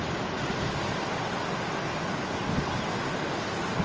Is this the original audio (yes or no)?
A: yes